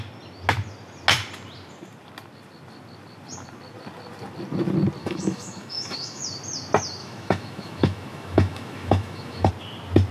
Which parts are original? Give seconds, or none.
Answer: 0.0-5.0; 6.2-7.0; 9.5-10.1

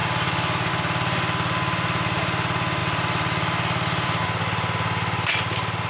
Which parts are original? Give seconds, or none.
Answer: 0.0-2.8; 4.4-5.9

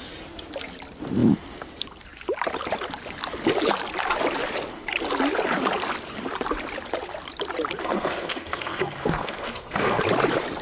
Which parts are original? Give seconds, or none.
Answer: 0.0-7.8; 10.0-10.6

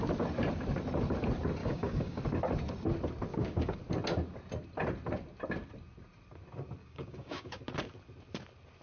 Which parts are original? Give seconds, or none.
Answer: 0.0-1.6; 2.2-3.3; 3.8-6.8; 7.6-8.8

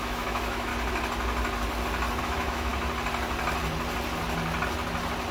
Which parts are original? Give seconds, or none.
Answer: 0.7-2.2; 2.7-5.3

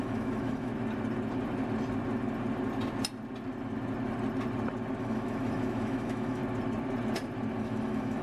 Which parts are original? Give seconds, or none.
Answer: 0.7-5.0; 6.4-7.6

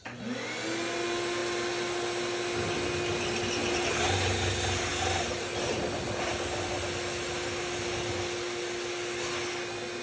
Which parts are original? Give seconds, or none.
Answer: 0.0-10.0